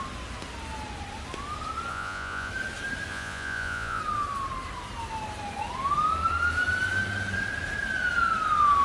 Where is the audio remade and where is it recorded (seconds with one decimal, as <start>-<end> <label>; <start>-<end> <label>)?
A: 0.0-1.9 recorded; 1.9-2.5 remade; 2.5-3.1 recorded; 3.1-4.0 remade; 4.0-8.8 recorded